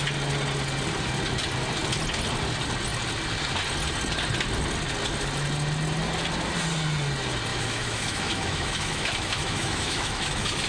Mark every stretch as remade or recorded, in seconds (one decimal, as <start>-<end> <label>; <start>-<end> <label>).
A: 0.0-7.5 recorded; 7.5-10.7 remade